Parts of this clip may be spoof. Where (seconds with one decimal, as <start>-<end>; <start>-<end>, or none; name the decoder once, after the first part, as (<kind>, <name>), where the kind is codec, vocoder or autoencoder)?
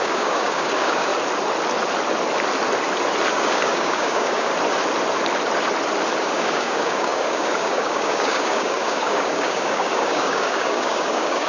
0.0-1.1 (codec, DAC); 3.3-4.5; 6.2-11.5